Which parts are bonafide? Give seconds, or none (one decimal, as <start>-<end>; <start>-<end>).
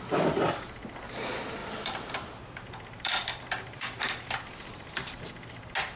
0.0-1.6; 5.2-6.0